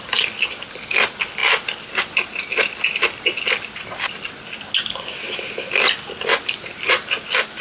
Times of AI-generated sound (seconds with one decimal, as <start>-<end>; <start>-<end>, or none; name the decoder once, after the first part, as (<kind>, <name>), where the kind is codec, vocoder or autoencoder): none